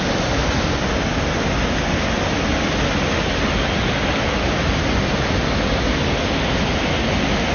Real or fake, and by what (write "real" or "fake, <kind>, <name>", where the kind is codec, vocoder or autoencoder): real